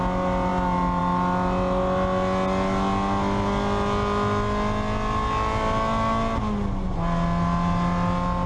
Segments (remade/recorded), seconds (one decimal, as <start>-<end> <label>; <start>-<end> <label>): 0.0-8.5 recorded